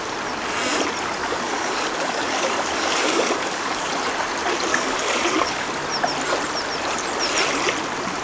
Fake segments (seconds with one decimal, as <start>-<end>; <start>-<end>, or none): 1.2-3.9; 4.7-5.7